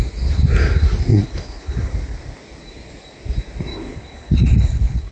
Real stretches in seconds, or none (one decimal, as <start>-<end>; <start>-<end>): 0.0-1.1; 1.9-3.7